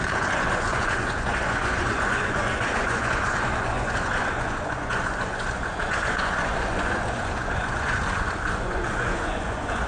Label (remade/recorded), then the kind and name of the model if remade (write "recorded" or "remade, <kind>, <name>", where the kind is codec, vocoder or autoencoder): remade, vocoder, Vocos